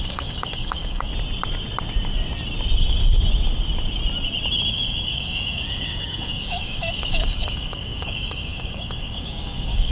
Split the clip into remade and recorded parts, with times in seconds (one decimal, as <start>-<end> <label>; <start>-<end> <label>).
0.0-1.1 remade; 1.1-4.7 recorded; 4.7-9.9 remade